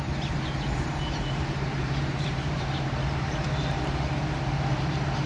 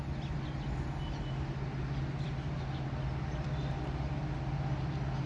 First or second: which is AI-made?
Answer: first